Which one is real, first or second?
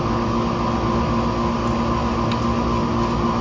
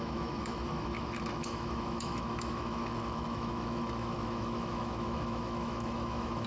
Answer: first